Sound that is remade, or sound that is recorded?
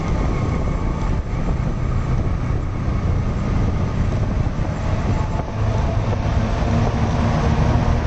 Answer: recorded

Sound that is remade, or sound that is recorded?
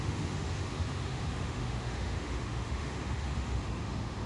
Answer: remade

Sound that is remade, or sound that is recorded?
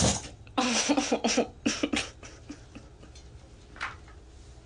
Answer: recorded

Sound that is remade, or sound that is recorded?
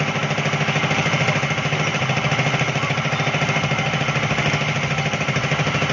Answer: recorded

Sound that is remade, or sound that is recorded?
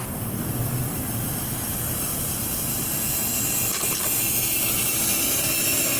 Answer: recorded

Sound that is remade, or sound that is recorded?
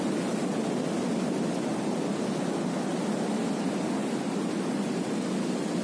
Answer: recorded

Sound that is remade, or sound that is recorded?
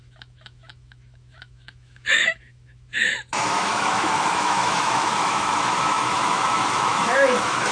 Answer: remade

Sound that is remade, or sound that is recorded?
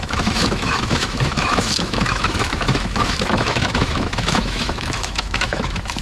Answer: remade